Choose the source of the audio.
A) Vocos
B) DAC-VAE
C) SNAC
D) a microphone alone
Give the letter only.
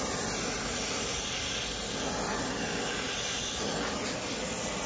D